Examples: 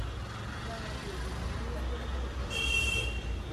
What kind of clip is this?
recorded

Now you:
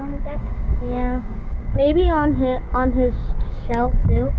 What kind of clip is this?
remade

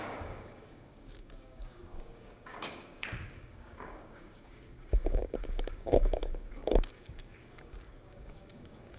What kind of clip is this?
remade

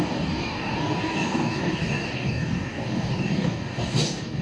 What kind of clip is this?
remade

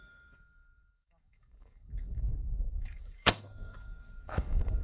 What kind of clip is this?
remade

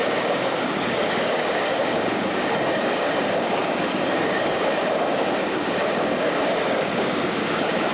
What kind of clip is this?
remade